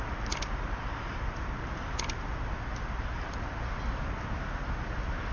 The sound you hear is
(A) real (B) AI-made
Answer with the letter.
A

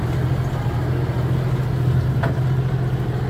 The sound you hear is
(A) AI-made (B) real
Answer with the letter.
B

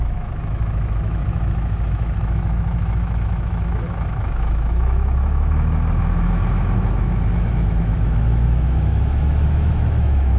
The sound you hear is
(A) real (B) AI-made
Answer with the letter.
B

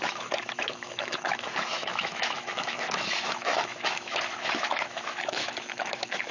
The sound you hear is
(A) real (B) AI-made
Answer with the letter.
B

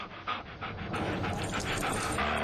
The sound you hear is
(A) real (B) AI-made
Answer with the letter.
A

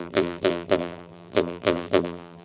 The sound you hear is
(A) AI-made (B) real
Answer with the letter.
A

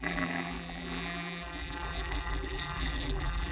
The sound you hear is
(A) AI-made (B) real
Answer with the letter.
A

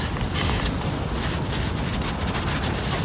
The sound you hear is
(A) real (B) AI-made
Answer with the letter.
B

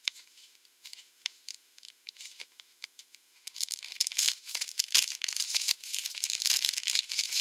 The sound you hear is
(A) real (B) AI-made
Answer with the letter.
B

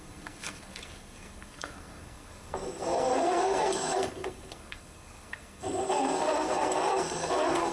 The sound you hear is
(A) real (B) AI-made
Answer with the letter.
B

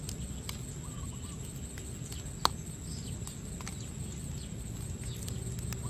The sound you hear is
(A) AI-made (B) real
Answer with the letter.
B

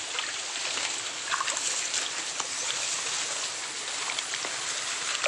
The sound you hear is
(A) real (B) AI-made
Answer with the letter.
A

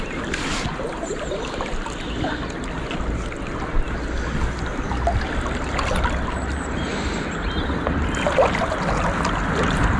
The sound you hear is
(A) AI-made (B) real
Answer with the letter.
B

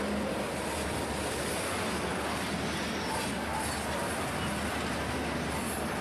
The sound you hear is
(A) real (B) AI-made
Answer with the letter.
A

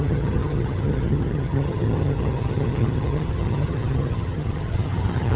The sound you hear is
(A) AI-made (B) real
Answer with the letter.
A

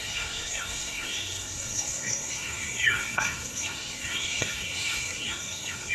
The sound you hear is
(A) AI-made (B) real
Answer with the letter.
A